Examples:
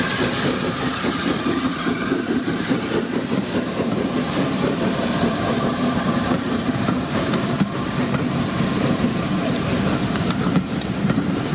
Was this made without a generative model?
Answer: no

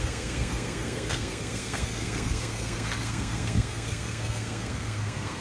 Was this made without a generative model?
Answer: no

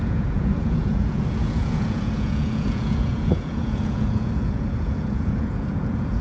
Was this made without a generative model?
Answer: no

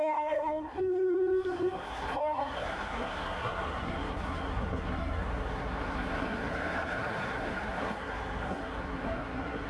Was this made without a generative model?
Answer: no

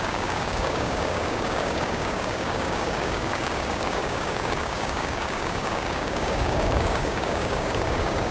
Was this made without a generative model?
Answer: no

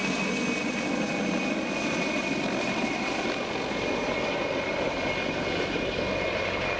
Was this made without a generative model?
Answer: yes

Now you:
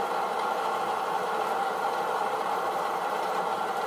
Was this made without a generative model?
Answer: no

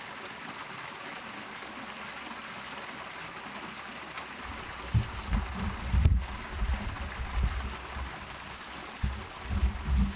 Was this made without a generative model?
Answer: yes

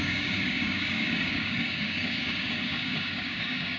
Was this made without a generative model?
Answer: no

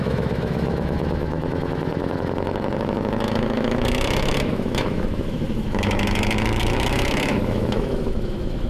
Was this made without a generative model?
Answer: no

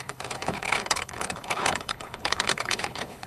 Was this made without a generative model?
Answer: no